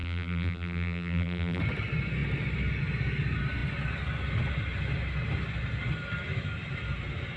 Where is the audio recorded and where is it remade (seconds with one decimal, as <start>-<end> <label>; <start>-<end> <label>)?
0.0-1.6 remade; 1.6-7.4 recorded